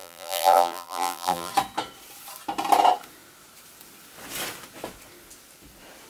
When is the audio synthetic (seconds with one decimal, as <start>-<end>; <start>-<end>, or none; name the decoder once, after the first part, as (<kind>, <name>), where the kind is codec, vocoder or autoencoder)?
0.0-1.5 (vocoder, BigVGAN v2)